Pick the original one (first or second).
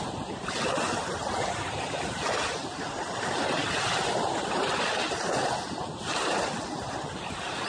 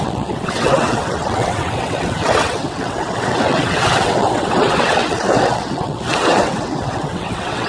first